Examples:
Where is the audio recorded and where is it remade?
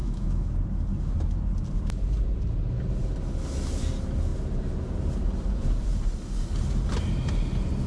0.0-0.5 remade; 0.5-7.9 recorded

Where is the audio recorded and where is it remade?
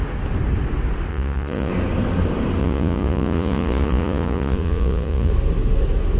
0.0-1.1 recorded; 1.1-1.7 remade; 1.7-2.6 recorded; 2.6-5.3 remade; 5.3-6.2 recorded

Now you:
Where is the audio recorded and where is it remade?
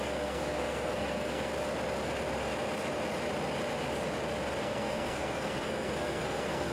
0.0-1.5 remade; 1.5-4.6 recorded; 4.6-6.7 remade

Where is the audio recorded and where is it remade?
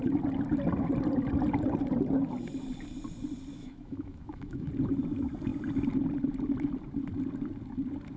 0.0-3.5 recorded; 3.5-4.7 remade; 4.7-8.2 recorded